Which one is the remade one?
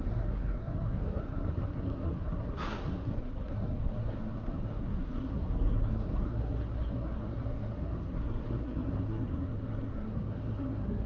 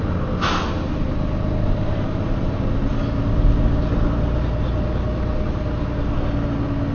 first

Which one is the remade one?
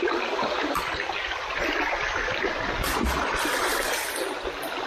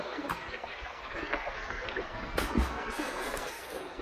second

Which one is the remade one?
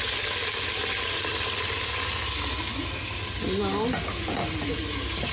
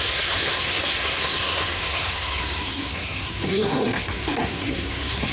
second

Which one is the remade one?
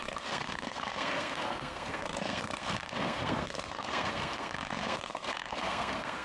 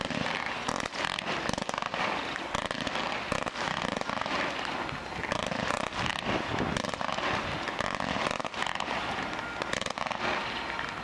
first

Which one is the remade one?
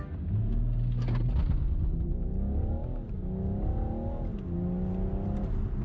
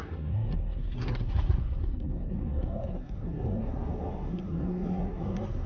second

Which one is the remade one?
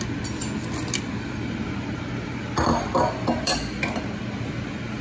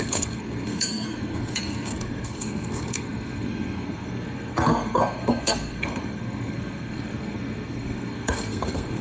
second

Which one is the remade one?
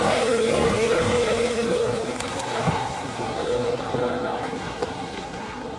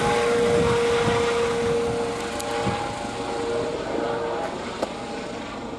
first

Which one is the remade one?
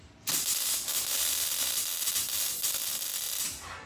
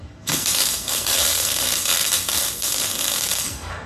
second